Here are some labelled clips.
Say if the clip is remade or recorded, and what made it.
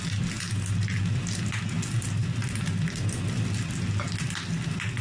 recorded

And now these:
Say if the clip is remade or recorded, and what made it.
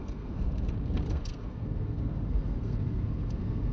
remade, codec, SNAC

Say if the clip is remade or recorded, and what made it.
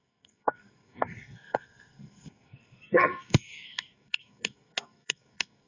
remade, codec, SNAC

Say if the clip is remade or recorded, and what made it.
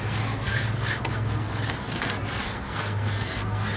remade, codec, SNAC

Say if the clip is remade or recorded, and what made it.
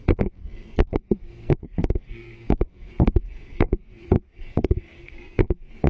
remade, codec, SNAC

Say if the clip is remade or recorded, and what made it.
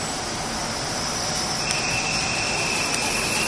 recorded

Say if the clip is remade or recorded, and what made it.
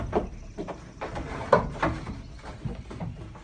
recorded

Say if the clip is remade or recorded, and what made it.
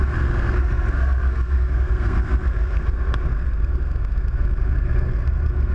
remade, codec, SNAC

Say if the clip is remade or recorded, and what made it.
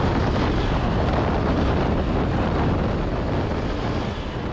recorded